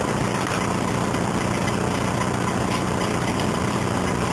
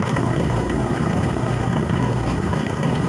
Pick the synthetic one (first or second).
second